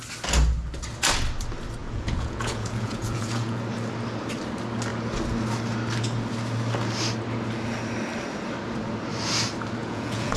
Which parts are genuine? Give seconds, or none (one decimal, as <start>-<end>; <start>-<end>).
0.0-1.8; 3.6-9.8